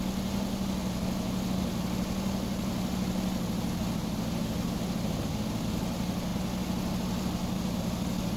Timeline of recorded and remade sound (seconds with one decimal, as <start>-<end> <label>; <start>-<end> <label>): 0.0-8.4 recorded